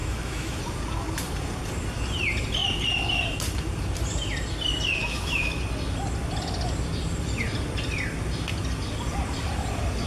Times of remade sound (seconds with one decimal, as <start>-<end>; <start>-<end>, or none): 0.0-0.6; 5.0-5.6